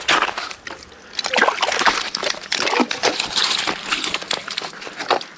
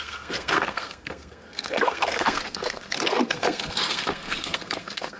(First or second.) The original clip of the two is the first